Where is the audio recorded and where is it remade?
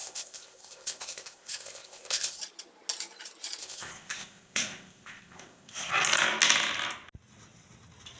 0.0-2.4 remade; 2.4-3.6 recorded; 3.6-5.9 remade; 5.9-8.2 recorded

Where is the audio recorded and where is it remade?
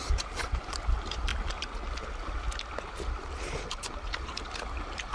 0.0-1.3 remade; 1.3-3.7 recorded; 3.7-5.1 remade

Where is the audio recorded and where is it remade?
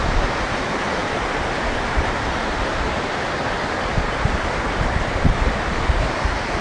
0.0-1.0 recorded; 1.0-5.0 remade; 5.0-6.6 recorded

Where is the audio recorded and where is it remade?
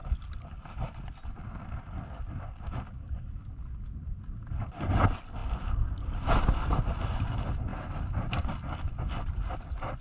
0.0-7.7 recorded; 7.7-8.6 remade; 8.6-10.0 recorded